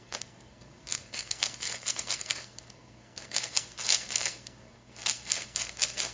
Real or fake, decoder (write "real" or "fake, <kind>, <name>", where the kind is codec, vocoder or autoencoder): fake, codec, SNAC